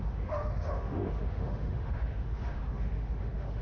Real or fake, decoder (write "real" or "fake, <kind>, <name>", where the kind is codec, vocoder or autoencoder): fake, autoencoder, DAC-VAE